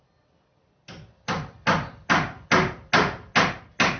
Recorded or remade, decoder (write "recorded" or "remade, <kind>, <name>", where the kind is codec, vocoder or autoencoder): recorded